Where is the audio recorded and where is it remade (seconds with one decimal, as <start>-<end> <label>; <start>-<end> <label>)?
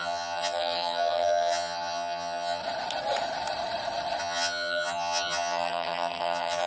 0.0-2.6 remade; 2.6-4.2 recorded; 4.2-6.7 remade